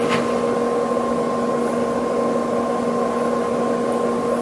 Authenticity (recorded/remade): recorded